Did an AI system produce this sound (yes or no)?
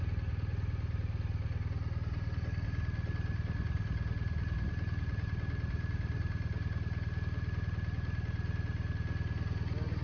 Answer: no